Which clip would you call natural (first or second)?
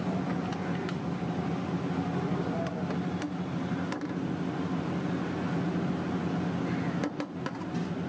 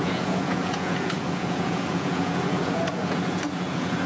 first